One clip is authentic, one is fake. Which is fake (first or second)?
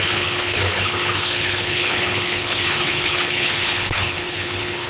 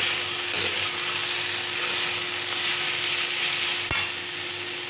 first